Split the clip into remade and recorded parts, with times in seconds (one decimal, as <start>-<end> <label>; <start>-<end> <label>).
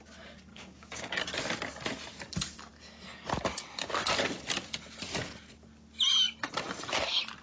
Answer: 0.0-0.5 recorded; 0.5-1.2 remade; 1.2-7.4 recorded